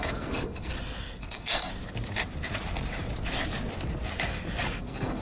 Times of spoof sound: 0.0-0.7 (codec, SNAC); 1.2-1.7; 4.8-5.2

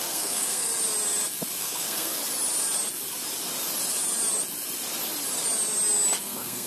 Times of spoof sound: 0.0-0.7 (codec, SNAC); 1.6-2.2; 6.2-6.7

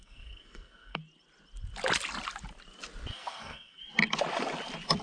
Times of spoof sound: 0.0-1.0 (codec, SNAC); 3.1-3.8

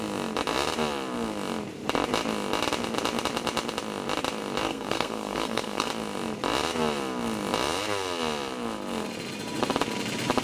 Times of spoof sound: 4.7-5.9 (codec, SNAC)

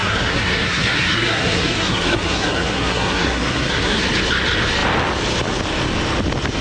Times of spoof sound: 0.0-4.0 (codec, SNAC)

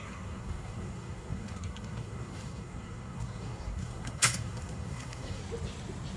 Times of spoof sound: 0.0-5.4 (codec, SNAC)

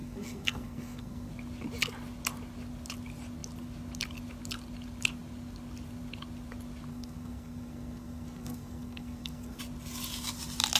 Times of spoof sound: 0.0-1.3 (codec, SNAC); 6.9-9.6